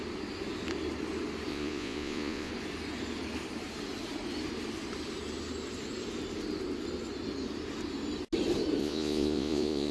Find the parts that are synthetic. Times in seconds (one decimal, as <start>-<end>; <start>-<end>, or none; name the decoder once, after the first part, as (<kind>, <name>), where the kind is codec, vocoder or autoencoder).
1.5-2.5 (vocoder, Vocos); 8.8-9.9